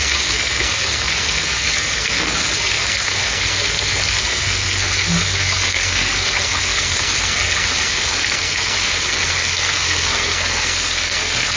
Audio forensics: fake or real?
fake